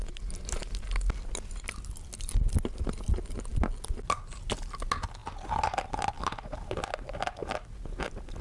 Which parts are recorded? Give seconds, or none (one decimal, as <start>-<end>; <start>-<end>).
0.0-8.4